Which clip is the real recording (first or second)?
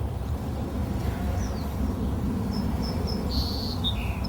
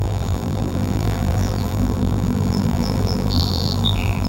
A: first